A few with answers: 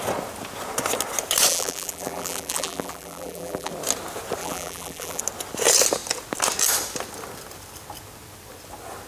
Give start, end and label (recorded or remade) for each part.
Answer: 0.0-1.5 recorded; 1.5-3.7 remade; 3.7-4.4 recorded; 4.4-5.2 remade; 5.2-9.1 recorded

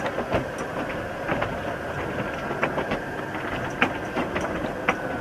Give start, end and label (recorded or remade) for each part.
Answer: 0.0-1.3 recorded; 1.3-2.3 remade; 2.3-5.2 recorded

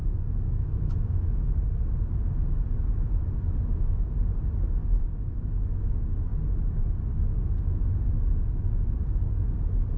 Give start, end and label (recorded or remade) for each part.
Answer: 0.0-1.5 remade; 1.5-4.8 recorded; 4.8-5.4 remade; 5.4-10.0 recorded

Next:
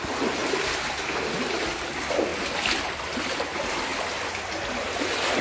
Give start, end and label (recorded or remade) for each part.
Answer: 0.0-5.4 recorded

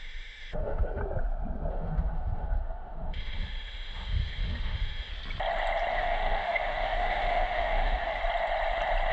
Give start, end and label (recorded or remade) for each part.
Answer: 0.0-1.0 remade; 1.0-1.7 recorded; 1.7-5.1 remade; 5.1-5.9 recorded; 5.9-8.2 remade; 8.2-9.1 recorded